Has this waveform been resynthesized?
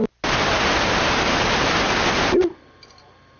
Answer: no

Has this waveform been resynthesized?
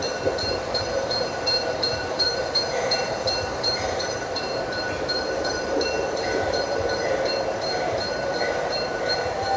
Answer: yes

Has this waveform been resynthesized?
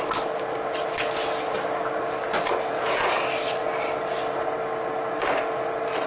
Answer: no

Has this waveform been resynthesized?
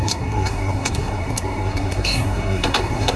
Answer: yes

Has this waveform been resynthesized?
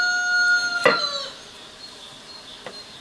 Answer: no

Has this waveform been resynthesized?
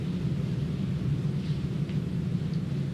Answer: no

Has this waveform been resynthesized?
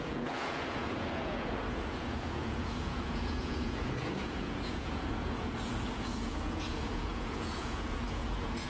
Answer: yes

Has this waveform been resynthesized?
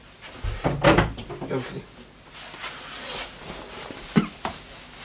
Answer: no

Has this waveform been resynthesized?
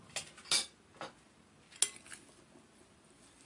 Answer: no